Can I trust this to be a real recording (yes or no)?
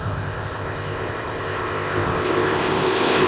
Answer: no